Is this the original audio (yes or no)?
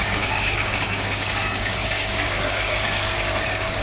no